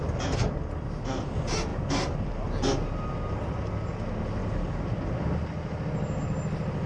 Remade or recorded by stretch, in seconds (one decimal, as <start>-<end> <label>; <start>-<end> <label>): 0.0-6.9 recorded